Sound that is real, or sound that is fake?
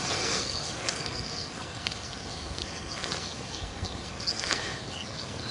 fake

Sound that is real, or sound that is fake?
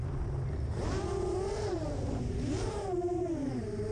fake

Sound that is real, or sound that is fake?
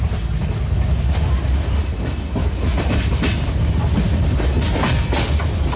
real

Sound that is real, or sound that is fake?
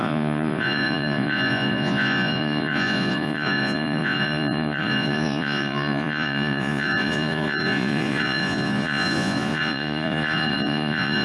fake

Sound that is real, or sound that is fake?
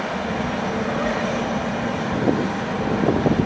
real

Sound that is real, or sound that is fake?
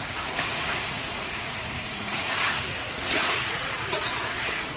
fake